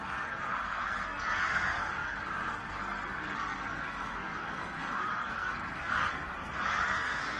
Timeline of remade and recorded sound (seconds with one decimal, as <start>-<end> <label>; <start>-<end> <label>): 0.0-7.4 remade